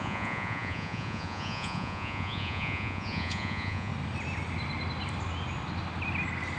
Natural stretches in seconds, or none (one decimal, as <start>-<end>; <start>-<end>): 3.9-6.6